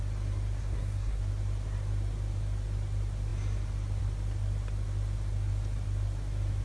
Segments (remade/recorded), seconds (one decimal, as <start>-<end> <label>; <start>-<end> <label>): 0.0-0.6 recorded; 0.6-1.2 remade; 1.2-6.6 recorded